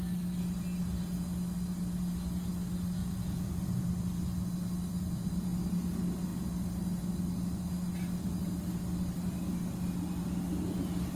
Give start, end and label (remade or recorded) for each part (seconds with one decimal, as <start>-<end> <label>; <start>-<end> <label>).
0.0-3.0 recorded; 3.0-3.9 remade; 3.9-11.2 recorded